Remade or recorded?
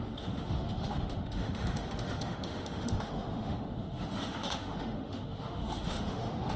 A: remade